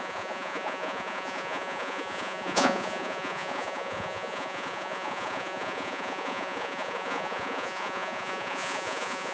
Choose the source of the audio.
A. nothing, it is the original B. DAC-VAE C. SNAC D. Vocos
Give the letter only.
D